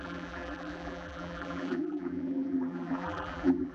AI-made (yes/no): yes